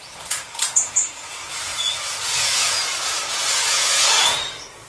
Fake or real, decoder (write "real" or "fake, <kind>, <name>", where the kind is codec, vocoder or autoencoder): fake, vocoder, Vocos